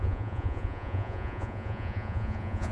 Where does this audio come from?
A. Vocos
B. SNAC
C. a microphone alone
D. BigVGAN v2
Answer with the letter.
A